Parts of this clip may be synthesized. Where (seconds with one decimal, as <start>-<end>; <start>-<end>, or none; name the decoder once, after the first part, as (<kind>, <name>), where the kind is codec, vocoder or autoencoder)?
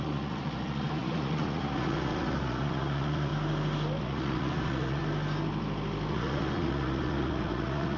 0.0-3.3 (vocoder, Vocos); 4.0-5.0; 6.1-8.0